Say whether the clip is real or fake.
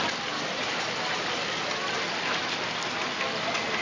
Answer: real